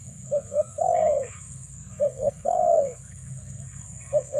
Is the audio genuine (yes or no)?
no